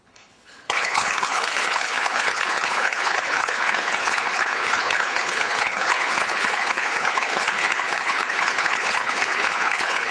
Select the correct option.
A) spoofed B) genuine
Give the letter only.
A